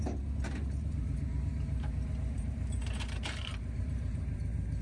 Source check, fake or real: fake